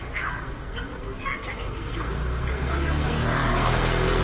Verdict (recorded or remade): remade